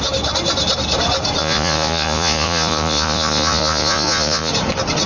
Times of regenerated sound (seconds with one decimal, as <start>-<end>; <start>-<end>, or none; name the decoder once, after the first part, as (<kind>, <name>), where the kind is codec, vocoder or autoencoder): 1.4-4.5 (vocoder, Vocos)